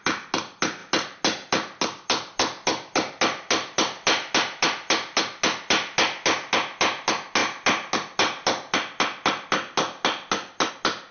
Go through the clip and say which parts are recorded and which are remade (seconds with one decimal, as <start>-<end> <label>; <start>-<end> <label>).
0.0-11.1 recorded